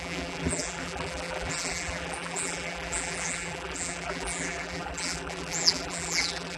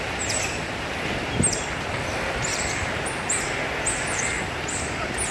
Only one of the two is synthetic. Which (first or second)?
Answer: first